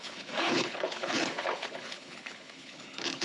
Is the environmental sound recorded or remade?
remade